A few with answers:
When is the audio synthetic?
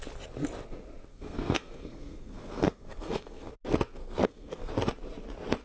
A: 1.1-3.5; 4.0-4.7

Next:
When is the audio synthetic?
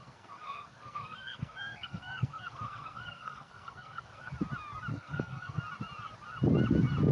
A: 0.0-4.3; 4.9-5.6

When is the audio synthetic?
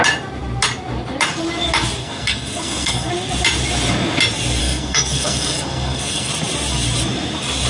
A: 2.0-3.1; 4.6-6.3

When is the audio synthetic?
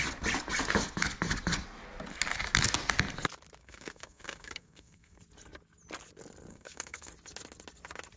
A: 3.6-5.2; 6.5-7.1